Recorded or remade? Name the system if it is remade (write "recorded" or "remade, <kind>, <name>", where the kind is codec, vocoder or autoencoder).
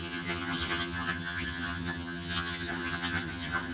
remade, vocoder, HiFi-GAN